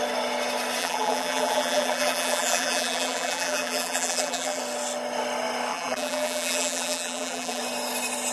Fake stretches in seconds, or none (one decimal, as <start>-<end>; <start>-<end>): 0.8-4.6; 5.7-7.6